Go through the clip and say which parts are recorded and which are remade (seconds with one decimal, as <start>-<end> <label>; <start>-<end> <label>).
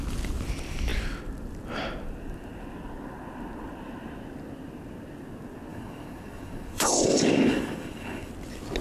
0.0-5.7 recorded; 5.7-8.3 remade; 8.3-8.8 recorded